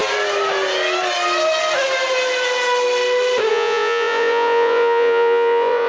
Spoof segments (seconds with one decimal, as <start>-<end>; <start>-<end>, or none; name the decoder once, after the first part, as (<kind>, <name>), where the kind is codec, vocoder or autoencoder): 3.5-5.9 (vocoder, Vocos)